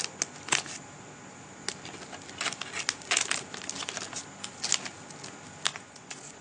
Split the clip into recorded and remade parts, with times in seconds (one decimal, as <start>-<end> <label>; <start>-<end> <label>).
0.0-5.7 recorded; 5.7-6.4 remade